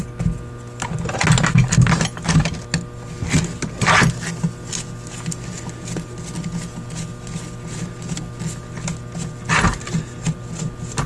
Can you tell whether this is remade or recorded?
recorded